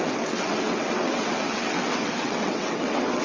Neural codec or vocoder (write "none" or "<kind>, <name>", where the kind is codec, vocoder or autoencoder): vocoder, WaveNeXt